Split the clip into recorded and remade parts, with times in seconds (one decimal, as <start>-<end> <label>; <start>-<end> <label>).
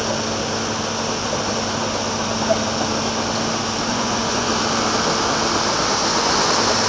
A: 0.0-3.9 recorded; 3.9-4.5 remade; 4.5-6.0 recorded; 6.0-6.5 remade; 6.5-6.9 recorded